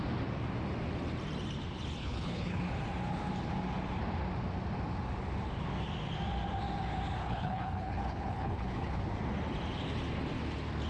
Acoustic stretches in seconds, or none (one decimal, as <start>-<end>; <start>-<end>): 0.0-2.0; 2.6-7.2; 9.0-10.9